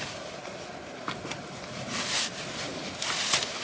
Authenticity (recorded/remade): recorded